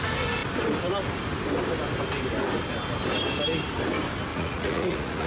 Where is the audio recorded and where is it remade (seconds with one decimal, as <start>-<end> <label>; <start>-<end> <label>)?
0.0-4.3 recorded; 4.3-5.3 remade